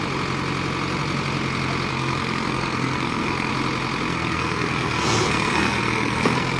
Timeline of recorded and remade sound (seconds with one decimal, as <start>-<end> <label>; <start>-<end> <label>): 0.0-1.9 recorded; 1.9-3.5 remade; 3.5-4.1 recorded; 4.1-6.6 remade

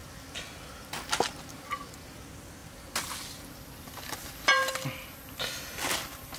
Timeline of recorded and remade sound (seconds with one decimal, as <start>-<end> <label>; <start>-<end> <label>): 0.0-6.4 recorded

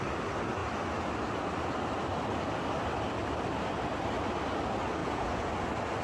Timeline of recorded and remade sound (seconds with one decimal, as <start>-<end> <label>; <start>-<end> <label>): 0.0-5.0 recorded; 5.0-5.5 remade; 5.5-6.0 recorded

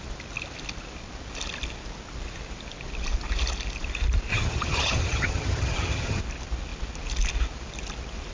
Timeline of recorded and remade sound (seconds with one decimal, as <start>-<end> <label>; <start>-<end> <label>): 0.0-4.3 recorded; 4.3-6.2 remade; 6.2-8.3 recorded

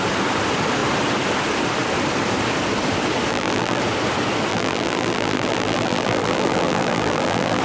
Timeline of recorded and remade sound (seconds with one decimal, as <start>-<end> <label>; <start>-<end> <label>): 0.0-3.3 recorded; 3.3-3.8 remade; 3.8-4.5 recorded; 4.5-7.6 remade

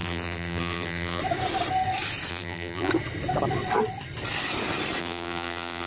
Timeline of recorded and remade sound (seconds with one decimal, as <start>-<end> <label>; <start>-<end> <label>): 0.0-1.2 remade; 1.2-2.3 recorded; 2.3-2.9 remade; 2.9-5.0 recorded; 5.0-5.9 remade